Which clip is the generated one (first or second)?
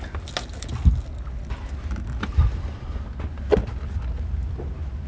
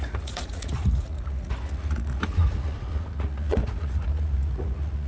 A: second